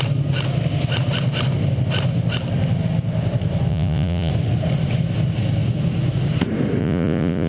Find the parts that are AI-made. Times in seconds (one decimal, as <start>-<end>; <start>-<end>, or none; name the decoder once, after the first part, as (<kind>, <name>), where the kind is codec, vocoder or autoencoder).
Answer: 3.7-4.3 (vocoder, Vocos); 6.8-7.5